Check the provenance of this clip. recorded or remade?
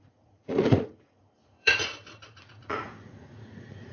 remade